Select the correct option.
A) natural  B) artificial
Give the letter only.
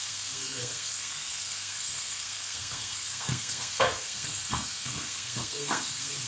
B